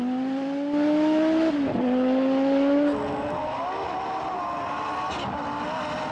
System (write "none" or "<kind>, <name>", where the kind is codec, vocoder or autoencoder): none